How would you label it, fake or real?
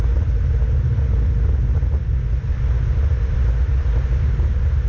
real